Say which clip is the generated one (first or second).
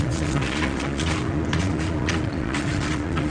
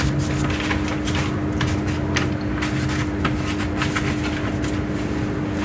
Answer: first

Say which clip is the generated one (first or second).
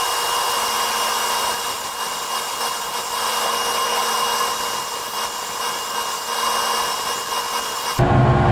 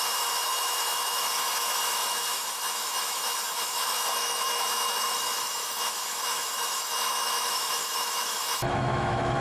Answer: second